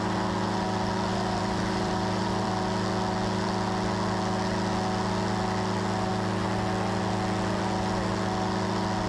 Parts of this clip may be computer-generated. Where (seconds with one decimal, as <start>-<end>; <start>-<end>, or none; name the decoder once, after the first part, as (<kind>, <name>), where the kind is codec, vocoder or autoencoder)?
1.1-2.5 (vocoder, BigVGAN v2)